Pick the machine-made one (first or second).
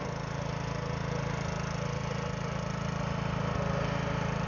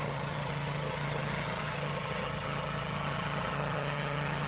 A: second